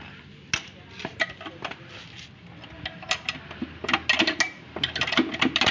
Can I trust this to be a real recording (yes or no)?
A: yes